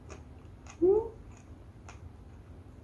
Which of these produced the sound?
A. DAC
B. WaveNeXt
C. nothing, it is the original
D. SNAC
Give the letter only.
C